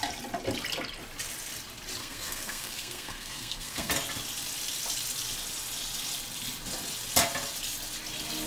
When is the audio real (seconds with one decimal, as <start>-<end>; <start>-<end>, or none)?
0.0-2.0; 3.9-8.5

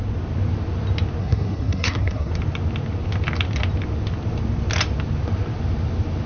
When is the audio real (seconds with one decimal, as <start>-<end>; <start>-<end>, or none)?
0.0-1.2; 2.3-6.3